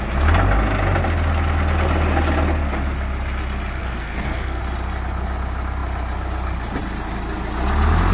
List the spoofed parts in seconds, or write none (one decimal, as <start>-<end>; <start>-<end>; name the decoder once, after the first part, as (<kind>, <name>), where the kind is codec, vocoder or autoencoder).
3.8-4.6 (codec, SNAC)

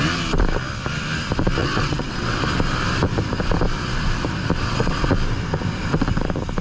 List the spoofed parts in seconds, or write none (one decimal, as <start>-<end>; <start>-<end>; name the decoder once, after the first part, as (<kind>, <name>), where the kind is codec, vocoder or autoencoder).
1.6-2.4 (vocoder, WaveNeXt); 4.6-5.1

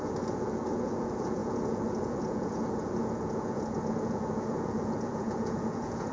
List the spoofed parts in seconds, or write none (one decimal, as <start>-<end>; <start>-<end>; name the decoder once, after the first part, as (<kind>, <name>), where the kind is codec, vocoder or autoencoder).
0.0-6.1 (vocoder, Vocos)

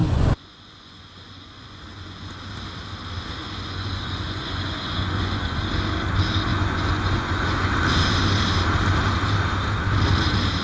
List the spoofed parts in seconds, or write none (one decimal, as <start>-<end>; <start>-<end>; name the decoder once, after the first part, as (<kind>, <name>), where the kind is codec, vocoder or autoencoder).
0.0-2.4 (vocoder, Vocos); 3.4-5.6; 6.5-7.7

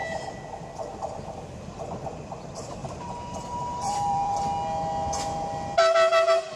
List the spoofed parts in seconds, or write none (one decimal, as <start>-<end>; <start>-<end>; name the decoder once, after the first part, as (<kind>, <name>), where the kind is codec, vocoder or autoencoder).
2.8-4.4 (vocoder, BigVGAN v2)

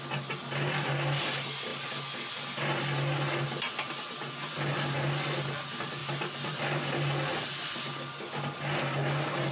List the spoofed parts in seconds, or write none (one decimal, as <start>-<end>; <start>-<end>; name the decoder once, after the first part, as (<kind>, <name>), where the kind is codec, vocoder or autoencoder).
6.0-6.6 (vocoder, BigVGAN v2)